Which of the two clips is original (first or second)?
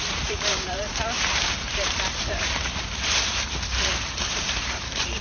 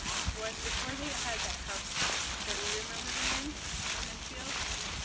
second